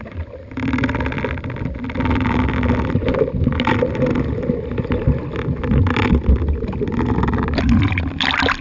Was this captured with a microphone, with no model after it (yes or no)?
yes